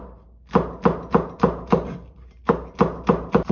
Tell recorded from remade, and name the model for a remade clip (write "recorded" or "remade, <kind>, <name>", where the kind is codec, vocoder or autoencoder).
recorded